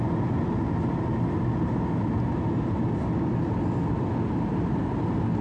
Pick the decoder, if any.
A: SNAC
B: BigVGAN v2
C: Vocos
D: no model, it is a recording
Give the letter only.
D